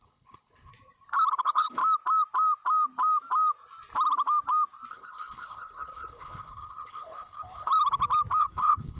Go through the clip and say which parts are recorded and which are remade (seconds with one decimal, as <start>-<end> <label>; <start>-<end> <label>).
0.0-0.7 remade; 0.7-1.4 recorded; 1.4-1.8 remade; 1.8-4.9 recorded; 4.9-7.7 remade; 7.7-8.4 recorded; 8.4-9.0 remade